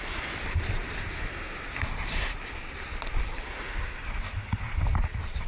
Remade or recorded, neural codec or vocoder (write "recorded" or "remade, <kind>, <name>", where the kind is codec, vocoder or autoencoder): recorded